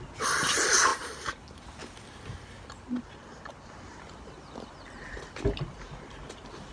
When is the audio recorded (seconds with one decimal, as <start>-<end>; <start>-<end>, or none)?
0.0-6.7